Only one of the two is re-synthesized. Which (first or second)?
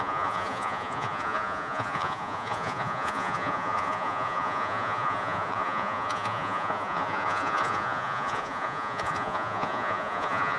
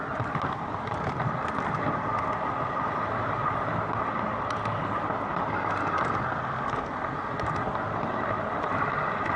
first